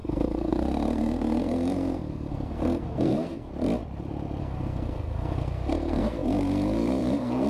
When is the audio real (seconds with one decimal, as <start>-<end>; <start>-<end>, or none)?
3.5-4.4

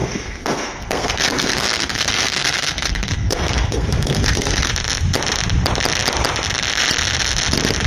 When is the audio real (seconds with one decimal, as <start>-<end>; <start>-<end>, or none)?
4.7-7.9

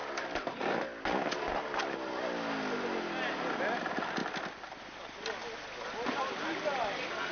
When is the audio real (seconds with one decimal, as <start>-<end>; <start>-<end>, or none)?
0.0-7.3

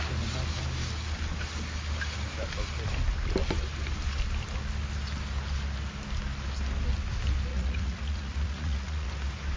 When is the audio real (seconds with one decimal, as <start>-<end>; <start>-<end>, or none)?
0.0-7.5; 9.1-9.6

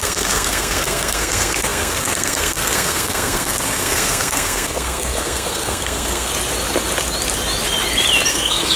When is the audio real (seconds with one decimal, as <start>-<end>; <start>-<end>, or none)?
6.3-8.3

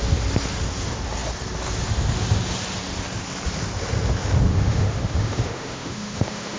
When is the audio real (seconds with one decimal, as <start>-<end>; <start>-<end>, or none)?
0.0-4.5

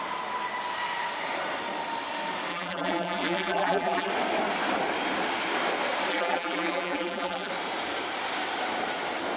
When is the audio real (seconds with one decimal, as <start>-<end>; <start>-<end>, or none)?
0.0-2.5; 4.1-6.1; 7.5-9.4

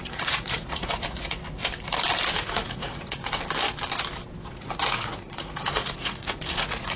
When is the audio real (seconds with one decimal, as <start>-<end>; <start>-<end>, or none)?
1.4-2.4; 3.2-4.5